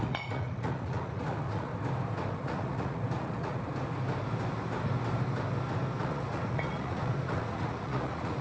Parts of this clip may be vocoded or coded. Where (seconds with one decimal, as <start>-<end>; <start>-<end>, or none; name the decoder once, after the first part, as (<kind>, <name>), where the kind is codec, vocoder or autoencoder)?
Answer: 0.0-1.7 (vocoder, Vocos); 2.4-3.7; 6.0-8.4